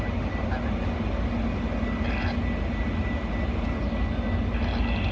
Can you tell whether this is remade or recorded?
recorded